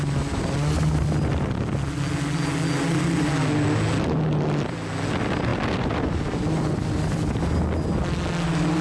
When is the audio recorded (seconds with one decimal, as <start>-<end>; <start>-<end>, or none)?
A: 0.0-8.8